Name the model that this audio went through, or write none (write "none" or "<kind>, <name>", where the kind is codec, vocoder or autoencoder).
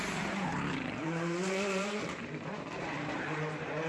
vocoder, BigVGAN v2